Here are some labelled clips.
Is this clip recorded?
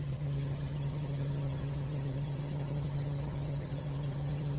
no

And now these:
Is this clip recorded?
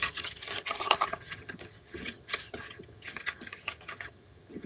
no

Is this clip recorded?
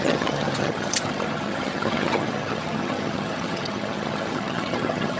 no